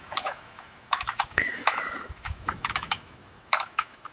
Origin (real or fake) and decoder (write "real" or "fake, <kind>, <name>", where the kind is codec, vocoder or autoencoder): fake, autoencoder, DAC-VAE